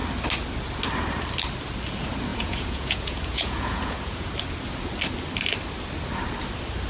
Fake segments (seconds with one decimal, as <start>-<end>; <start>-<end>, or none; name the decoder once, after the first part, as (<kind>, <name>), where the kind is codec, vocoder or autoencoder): 2.3-4.3 (vocoder, Vocos)